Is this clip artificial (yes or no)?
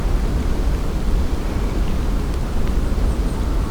no